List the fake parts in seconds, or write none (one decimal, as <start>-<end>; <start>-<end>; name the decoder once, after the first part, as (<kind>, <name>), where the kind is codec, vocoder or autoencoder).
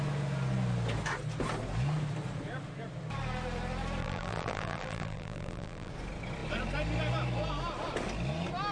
4.0-5.9 (vocoder, BigVGAN v2)